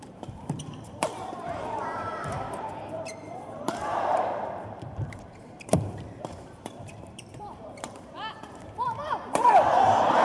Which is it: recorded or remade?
remade